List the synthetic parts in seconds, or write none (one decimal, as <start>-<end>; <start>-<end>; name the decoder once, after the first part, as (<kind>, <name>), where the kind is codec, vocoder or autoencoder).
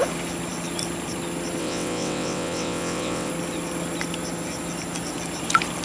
1.6-3.3 (vocoder, WaveNeXt)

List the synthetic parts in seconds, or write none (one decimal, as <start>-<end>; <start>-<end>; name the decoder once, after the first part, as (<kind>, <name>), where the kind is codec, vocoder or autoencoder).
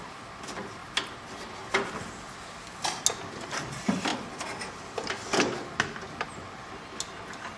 none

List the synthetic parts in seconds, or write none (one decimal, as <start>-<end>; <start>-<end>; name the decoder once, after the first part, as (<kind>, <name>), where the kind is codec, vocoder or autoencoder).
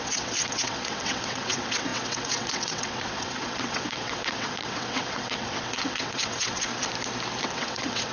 0.0-6.7 (vocoder, WaveNeXt); 7.4-8.1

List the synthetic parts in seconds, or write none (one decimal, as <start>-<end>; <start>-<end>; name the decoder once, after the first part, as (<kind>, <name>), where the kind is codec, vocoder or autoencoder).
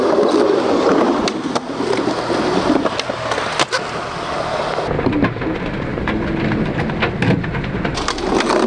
none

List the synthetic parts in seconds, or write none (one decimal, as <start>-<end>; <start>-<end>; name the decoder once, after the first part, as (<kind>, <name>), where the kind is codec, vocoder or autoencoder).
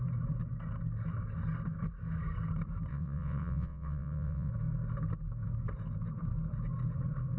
2.9-4.5 (vocoder, WaveNeXt)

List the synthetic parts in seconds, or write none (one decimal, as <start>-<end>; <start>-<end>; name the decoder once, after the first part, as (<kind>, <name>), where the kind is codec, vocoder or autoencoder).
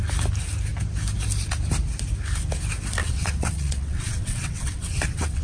3.0-5.4 (vocoder, WaveNeXt)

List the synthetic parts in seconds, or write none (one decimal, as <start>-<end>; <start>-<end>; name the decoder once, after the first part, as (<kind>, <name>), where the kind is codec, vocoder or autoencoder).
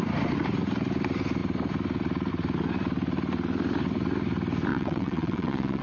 4.7-5.8 (vocoder, WaveNeXt)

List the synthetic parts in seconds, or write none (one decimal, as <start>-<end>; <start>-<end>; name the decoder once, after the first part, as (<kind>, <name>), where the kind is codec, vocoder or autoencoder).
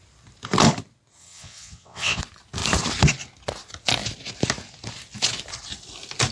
1.2-2.2 (vocoder, WaveNeXt)